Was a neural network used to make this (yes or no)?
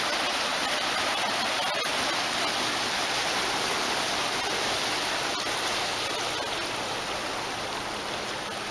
no